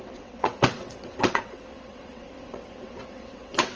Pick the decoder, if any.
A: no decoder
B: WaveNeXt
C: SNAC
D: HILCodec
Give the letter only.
B